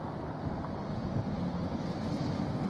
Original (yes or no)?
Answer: yes